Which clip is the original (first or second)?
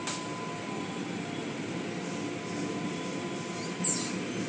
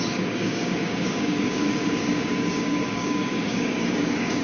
first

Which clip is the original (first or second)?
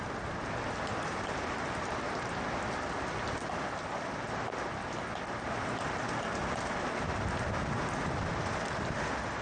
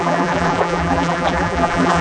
first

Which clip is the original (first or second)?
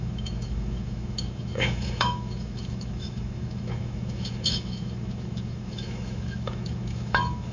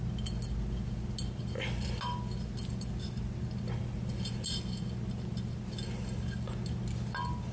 second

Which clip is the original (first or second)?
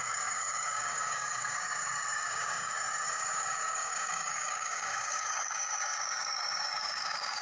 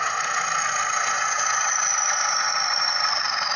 second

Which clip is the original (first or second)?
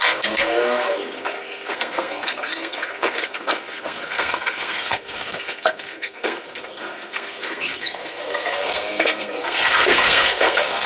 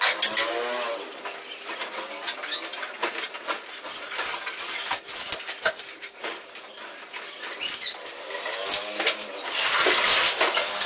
second